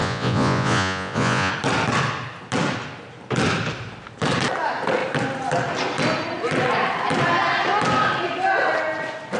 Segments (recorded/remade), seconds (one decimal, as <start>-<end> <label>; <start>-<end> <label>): 0.0-1.5 remade; 1.5-9.4 recorded